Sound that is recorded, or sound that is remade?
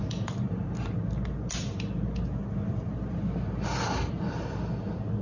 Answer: recorded